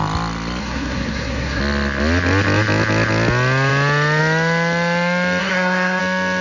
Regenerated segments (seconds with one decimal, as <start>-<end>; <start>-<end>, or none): 0.6-1.6; 5.4-6.0